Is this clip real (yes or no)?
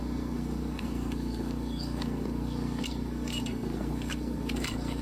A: no